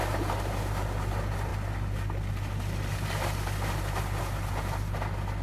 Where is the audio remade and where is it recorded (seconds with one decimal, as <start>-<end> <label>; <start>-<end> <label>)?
0.0-5.4 recorded